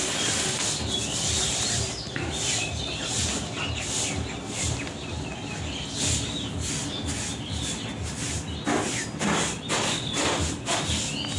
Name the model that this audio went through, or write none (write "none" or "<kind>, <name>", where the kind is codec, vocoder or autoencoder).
none